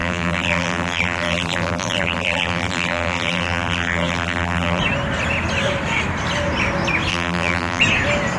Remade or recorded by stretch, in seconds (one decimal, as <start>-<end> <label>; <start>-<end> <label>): 0.0-4.8 remade; 4.8-7.1 recorded; 7.1-7.8 remade; 7.8-8.4 recorded